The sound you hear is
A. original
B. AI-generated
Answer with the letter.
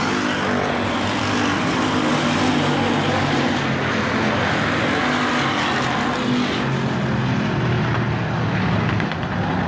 A